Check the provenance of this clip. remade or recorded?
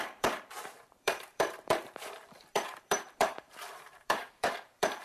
remade